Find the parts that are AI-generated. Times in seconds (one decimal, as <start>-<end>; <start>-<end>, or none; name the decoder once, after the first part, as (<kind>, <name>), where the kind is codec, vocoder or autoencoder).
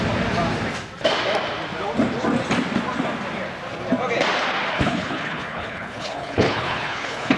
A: 4.7-7.4 (codec, HILCodec)